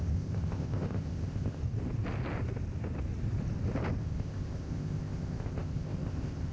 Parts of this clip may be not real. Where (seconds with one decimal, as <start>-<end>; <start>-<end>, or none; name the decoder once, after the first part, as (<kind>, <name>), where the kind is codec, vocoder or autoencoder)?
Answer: 0.0-1.6 (codec, ZipCodec); 4.0-6.5